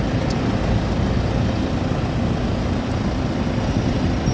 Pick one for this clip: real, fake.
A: real